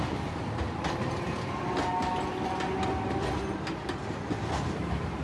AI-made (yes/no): no